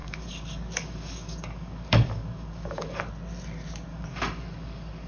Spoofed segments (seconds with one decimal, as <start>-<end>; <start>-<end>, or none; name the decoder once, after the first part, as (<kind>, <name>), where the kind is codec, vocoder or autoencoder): 0.0-3.1 (codec, DAC); 3.9-5.1